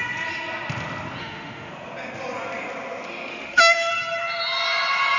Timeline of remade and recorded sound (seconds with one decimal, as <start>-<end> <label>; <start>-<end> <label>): 0.0-1.2 recorded; 1.2-1.7 remade; 1.7-3.3 recorded; 3.3-3.9 remade; 3.9-5.2 recorded